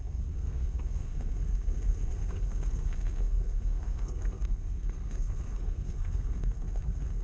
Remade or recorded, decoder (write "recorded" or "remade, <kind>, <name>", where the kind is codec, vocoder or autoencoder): remade, codec, SNAC